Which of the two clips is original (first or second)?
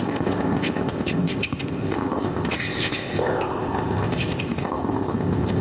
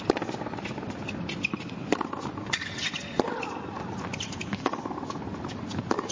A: second